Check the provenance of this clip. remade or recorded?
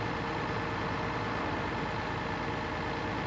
recorded